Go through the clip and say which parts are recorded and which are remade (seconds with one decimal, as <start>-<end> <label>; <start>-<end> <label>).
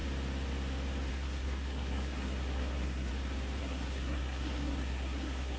0.0-1.1 recorded; 1.1-3.1 remade; 3.1-3.6 recorded; 3.6-5.6 remade